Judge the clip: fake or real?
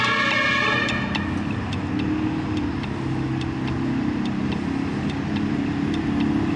real